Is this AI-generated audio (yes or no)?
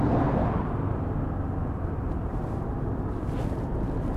no